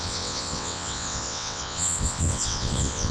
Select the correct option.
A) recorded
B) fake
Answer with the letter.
B